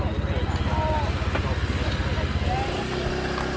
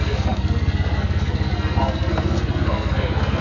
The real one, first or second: first